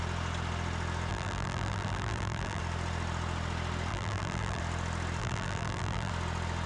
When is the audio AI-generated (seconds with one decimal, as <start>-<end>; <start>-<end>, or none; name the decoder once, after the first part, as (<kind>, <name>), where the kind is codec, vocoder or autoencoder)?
1.1-2.6 (vocoder, BigVGAN v2); 3.9-4.6; 5.2-6.1